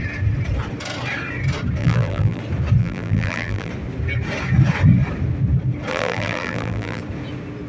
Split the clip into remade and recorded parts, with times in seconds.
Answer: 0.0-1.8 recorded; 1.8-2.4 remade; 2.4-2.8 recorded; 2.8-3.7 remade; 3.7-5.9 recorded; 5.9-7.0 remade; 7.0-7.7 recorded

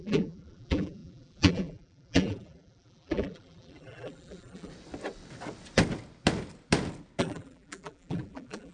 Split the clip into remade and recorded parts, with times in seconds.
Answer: 0.0-4.7 remade; 4.7-7.2 recorded; 7.2-8.7 remade

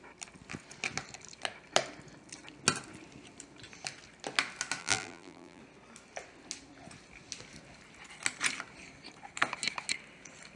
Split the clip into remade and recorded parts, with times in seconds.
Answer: 0.0-4.8 recorded; 4.8-5.6 remade; 5.6-10.6 recorded

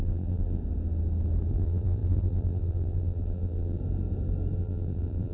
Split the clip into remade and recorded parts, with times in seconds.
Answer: 0.0-0.6 remade; 0.6-1.5 recorded; 1.5-3.8 remade; 3.8-4.6 recorded; 4.6-5.3 remade

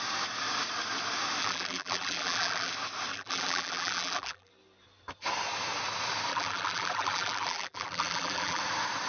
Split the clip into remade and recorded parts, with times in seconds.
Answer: 0.0-1.4 recorded; 1.4-2.7 remade; 2.7-3.1 recorded; 3.1-4.5 remade; 4.5-6.3 recorded; 6.3-8.6 remade; 8.6-9.1 recorded

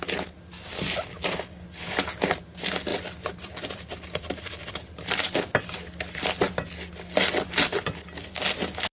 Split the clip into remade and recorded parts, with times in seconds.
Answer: 0.0-2.9 recorded; 2.9-5.6 remade; 5.6-9.0 recorded

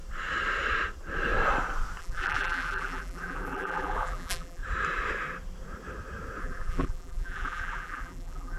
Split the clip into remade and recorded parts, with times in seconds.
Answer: 0.0-2.0 recorded; 2.0-4.6 remade; 4.6-6.4 recorded; 6.4-8.6 remade